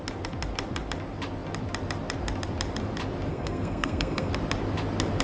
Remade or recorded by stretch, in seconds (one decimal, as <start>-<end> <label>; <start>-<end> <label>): 0.0-3.3 recorded; 3.3-4.3 remade; 4.3-5.2 recorded